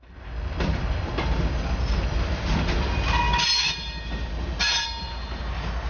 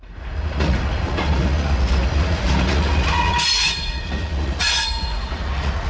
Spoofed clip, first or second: second